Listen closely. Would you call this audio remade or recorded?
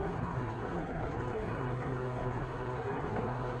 remade